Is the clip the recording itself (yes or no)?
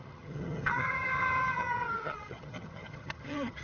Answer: no